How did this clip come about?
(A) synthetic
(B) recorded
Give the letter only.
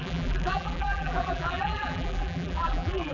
A